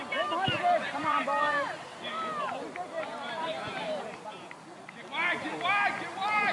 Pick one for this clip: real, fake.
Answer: fake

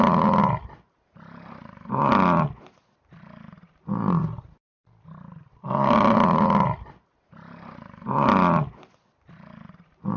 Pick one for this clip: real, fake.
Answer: real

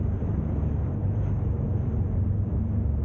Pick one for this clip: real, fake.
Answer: fake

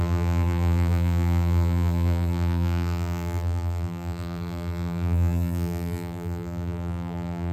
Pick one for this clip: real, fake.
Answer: fake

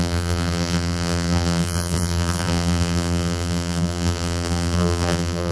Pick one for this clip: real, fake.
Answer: fake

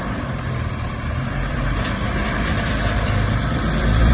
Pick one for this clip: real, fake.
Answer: fake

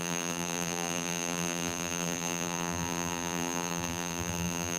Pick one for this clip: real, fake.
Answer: fake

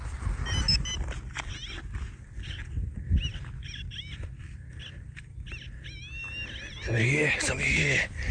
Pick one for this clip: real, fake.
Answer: real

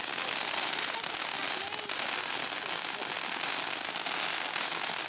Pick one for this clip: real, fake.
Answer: real